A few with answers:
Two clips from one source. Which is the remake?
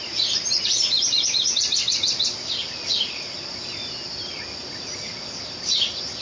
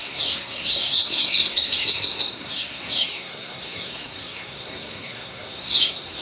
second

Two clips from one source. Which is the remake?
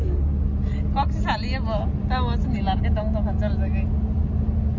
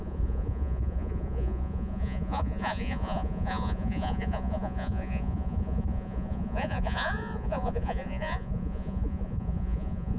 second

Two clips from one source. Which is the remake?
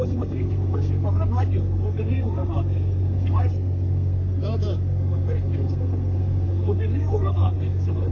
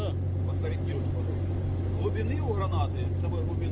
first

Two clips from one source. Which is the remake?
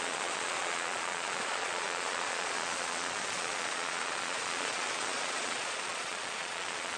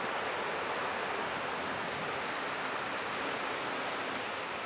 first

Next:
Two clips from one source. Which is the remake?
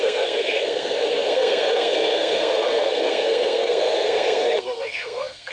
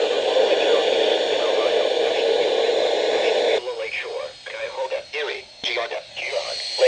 first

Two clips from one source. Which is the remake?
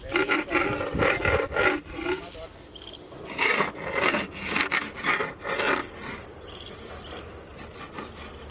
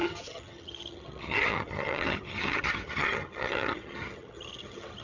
second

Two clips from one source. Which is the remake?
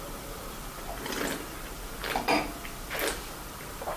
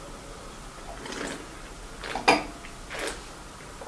first